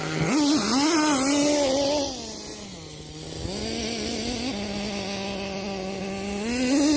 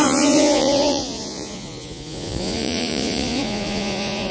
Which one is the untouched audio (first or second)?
first